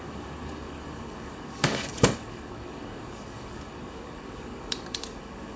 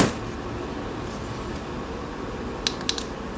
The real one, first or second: second